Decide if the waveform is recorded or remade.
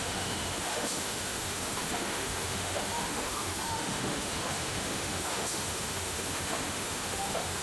remade